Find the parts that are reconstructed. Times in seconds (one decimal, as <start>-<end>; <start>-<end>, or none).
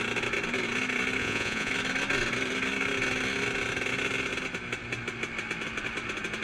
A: 1.2-1.7